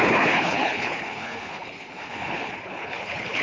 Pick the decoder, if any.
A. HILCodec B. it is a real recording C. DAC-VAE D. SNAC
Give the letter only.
A